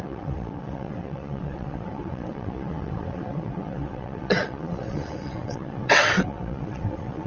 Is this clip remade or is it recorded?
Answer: remade